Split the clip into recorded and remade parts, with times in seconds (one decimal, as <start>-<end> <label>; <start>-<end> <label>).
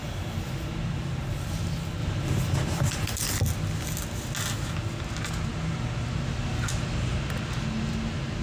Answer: 0.0-1.2 remade; 1.2-2.0 recorded; 2.0-3.4 remade; 3.4-8.4 recorded